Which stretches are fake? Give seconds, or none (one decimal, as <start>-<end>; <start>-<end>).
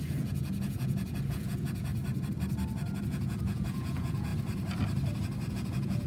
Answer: 0.0-1.9; 3.0-4.3; 5.5-6.1